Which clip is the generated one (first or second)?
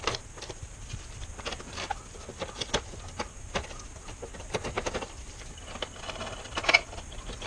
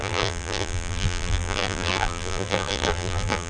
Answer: second